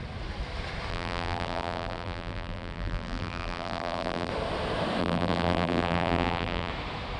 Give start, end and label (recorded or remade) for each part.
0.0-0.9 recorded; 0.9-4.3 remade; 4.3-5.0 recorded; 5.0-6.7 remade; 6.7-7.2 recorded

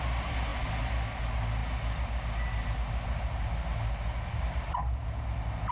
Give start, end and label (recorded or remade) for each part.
0.0-5.7 recorded

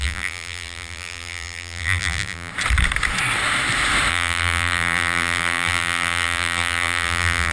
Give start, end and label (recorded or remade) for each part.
0.0-2.5 remade; 2.5-4.1 recorded; 4.1-7.5 remade

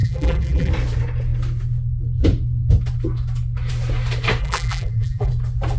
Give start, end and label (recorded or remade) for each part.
0.0-0.7 remade; 0.7-4.4 recorded; 4.4-5.3 remade; 5.3-5.8 recorded

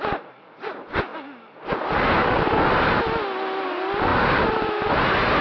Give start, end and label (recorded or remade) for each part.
0.0-4.1 recorded; 4.1-4.9 remade; 4.9-5.4 recorded